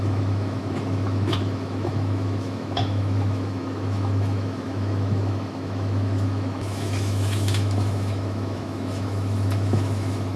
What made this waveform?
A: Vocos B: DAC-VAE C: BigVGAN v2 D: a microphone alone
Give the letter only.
B